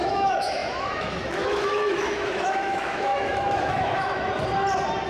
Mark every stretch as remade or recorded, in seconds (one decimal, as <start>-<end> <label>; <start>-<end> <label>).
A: 0.0-4.3 remade; 4.3-5.1 recorded